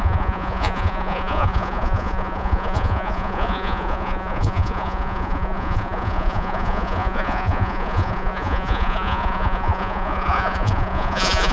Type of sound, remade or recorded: remade